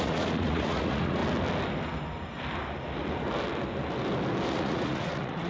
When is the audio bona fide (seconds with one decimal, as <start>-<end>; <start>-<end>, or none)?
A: 1.2-4.5